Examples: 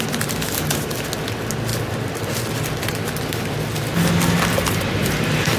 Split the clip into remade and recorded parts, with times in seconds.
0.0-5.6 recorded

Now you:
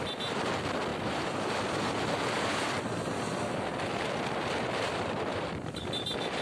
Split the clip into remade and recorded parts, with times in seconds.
0.0-0.9 recorded; 0.9-3.1 remade; 3.1-3.7 recorded; 3.7-5.7 remade; 5.7-6.4 recorded

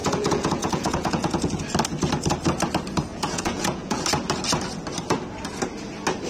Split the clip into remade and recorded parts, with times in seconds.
0.0-1.6 remade; 1.6-3.1 recorded; 3.1-4.0 remade; 4.0-6.3 recorded

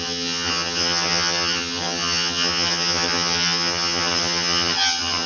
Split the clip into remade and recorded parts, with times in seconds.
0.0-5.3 remade

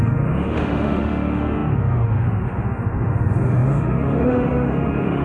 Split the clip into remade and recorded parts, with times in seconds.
0.0-5.2 remade